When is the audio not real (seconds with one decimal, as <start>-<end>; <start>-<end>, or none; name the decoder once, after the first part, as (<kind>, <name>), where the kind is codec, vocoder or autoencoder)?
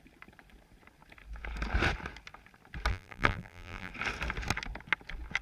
2.9-3.9 (vocoder, BigVGAN v2)